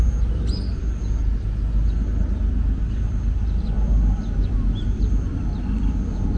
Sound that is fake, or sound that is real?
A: real